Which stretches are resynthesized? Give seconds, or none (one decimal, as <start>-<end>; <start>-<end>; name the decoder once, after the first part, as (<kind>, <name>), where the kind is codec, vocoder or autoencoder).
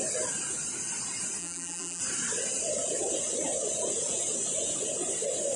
1.4-2.0 (vocoder, BigVGAN v2)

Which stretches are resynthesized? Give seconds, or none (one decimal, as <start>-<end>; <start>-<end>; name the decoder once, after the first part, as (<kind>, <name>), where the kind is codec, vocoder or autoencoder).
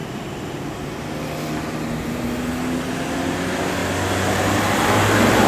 none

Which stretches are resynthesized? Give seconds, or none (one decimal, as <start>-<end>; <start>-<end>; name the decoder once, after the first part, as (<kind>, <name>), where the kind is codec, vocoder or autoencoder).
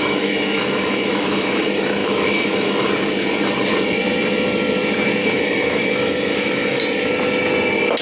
0.0-1.6 (autoencoder, DAC-VAE); 2.0-2.9; 5.2-6.8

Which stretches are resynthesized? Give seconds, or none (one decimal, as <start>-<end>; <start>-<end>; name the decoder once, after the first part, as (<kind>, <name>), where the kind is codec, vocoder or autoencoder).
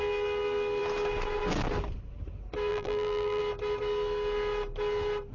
2.7-3.4 (vocoder, BigVGAN v2)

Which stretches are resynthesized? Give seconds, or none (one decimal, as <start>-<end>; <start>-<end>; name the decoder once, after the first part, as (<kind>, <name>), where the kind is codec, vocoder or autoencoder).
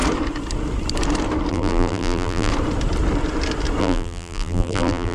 1.5-2.5 (vocoder, BigVGAN v2); 3.8-5.1